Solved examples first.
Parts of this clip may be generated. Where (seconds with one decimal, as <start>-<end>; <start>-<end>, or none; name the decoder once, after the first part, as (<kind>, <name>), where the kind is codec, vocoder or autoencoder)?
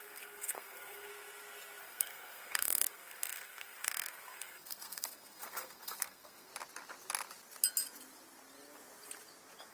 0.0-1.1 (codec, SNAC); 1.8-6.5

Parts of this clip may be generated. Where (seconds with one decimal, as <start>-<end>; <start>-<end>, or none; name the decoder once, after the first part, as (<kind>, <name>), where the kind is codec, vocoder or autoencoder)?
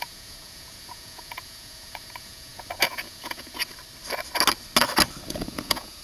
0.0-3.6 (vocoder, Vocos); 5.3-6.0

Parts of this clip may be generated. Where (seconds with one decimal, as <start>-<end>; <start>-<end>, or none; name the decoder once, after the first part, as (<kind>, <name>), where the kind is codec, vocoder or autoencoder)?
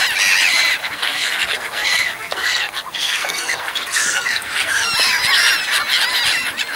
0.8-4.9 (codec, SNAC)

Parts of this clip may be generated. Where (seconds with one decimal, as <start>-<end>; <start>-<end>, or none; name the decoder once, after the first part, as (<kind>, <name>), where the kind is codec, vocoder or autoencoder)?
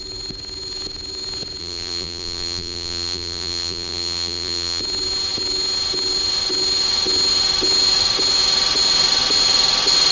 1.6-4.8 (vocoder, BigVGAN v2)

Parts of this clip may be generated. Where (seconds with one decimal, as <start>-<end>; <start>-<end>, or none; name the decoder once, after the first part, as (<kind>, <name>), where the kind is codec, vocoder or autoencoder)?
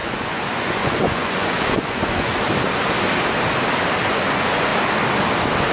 0.0-2.3 (vocoder, Vocos); 4.1-4.7